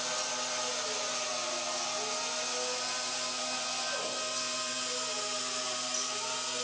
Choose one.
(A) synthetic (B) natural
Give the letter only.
B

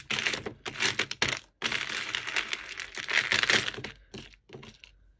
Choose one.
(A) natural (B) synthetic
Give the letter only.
A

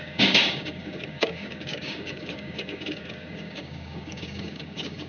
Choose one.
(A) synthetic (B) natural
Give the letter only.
A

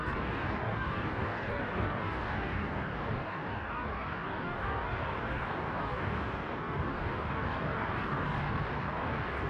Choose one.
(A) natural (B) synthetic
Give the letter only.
B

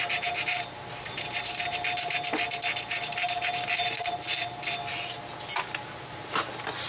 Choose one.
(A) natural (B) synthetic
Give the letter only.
A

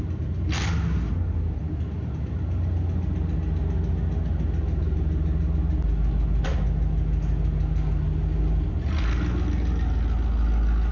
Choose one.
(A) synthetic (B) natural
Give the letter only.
B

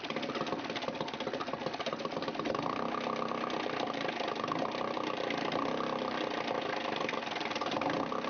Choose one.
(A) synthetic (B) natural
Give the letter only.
B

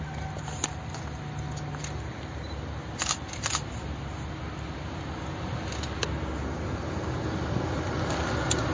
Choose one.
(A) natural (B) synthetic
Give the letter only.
A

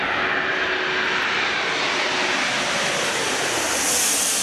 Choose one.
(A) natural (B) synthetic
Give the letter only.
A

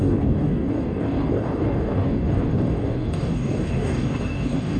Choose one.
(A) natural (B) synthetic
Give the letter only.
B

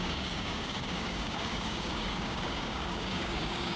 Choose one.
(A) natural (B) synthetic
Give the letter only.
B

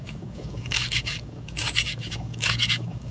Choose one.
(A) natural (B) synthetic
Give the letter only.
B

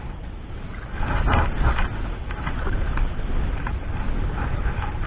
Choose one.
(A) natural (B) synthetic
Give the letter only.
A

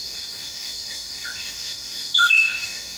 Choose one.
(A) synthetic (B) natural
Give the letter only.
A